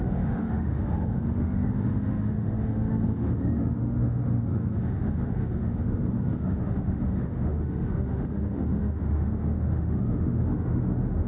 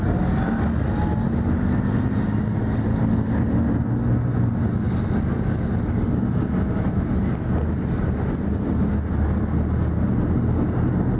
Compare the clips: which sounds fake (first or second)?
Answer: first